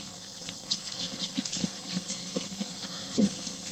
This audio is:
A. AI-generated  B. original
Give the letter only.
A